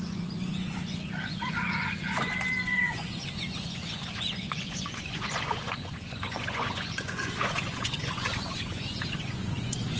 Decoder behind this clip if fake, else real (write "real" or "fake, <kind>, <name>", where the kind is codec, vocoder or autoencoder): fake, vocoder, Vocos